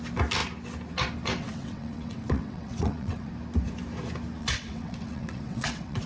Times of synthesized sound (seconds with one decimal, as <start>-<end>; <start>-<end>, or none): 1.4-3.3; 4.4-6.1